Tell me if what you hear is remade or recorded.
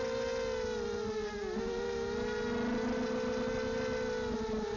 recorded